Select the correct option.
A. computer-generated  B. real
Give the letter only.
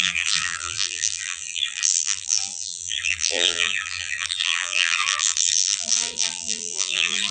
A